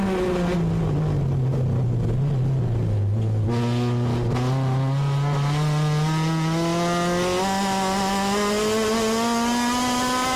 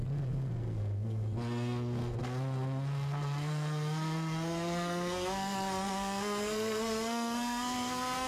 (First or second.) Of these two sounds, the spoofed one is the second